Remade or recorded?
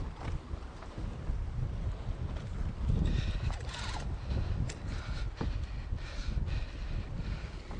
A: recorded